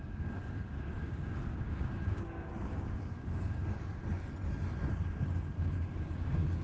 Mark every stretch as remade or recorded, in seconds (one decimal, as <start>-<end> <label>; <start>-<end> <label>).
0.0-4.0 remade; 4.0-4.9 recorded; 4.9-6.6 remade